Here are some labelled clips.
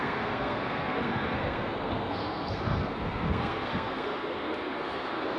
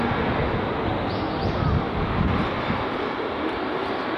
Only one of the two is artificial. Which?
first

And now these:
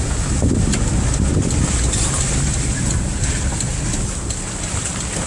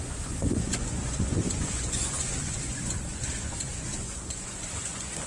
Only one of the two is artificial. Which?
second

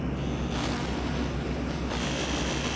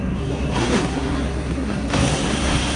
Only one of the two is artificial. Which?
second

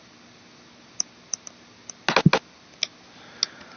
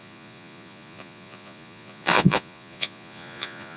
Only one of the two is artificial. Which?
second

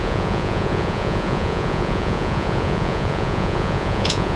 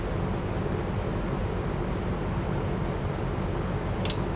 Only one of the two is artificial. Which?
first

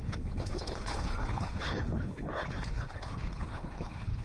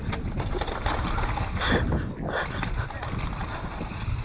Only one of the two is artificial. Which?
first